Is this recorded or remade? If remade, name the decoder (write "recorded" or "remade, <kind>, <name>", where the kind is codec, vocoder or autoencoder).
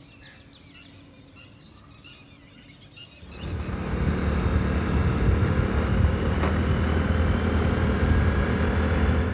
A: recorded